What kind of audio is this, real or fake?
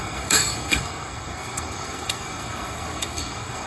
fake